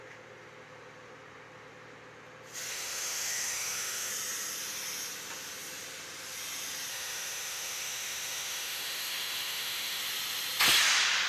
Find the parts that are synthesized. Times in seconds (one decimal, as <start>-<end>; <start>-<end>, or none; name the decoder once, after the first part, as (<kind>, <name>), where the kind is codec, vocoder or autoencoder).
2.7-4.1 (autoencoder, DAC-VAE); 6.9-10.0